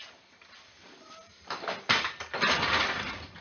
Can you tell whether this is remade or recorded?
remade